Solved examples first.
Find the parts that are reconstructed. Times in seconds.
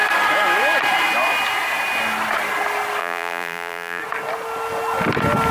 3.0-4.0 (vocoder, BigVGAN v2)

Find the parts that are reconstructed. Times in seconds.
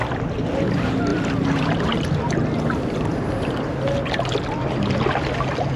1.1-1.8 (vocoder, BigVGAN v2); 3.1-3.7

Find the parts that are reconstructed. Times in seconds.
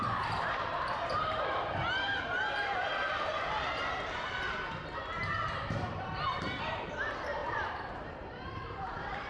0.0-9.3 (vocoder, BigVGAN v2)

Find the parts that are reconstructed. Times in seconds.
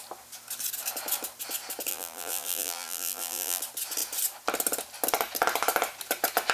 1.9-3.6 (vocoder, BigVGAN v2)